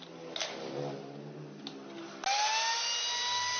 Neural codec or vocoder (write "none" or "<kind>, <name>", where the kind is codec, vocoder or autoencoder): none